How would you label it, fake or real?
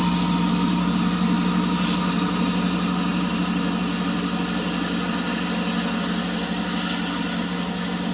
real